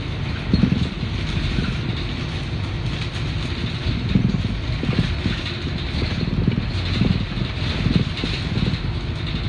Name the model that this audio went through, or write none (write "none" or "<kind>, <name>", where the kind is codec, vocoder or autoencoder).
none